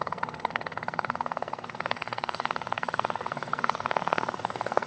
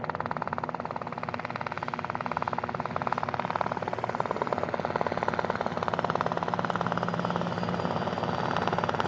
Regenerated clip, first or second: first